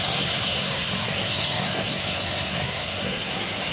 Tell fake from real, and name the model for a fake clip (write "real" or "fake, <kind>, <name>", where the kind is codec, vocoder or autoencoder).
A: fake, codec, SNAC